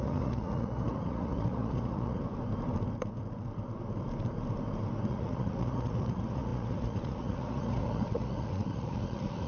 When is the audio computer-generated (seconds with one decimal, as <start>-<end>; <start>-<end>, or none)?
0.0-2.2; 5.1-9.5